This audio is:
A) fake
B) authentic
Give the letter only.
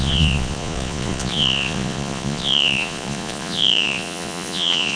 A